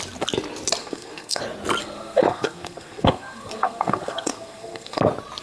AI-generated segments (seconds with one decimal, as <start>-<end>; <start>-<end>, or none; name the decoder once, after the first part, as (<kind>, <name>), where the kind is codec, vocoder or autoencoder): 0.8-1.4 (codec, SNAC); 1.8-5.0